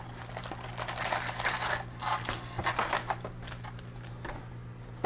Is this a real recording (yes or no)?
yes